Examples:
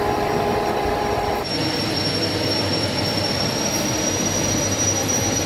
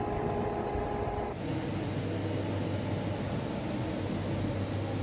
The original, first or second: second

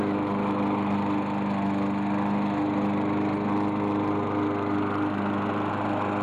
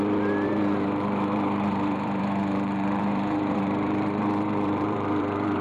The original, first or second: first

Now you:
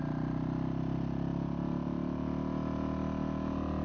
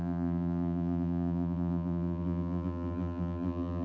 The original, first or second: first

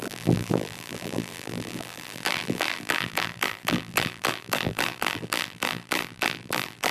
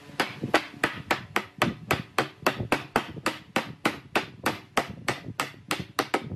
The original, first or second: second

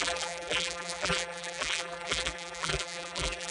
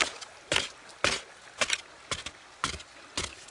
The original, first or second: second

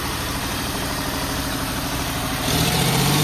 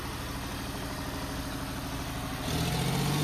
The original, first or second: second